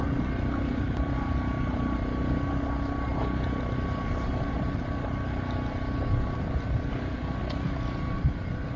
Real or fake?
real